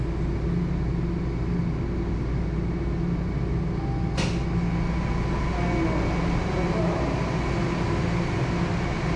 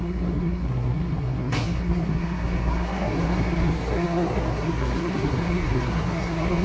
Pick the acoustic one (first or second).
first